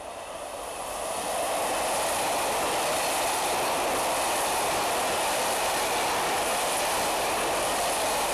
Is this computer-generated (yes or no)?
yes